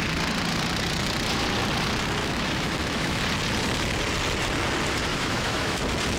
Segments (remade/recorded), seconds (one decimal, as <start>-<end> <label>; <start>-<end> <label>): 0.0-2.2 recorded; 2.2-3.2 remade; 3.2-5.1 recorded; 5.1-5.8 remade; 5.8-6.2 recorded